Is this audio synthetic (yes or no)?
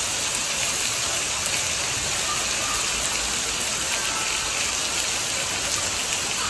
no